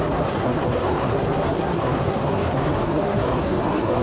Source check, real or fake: fake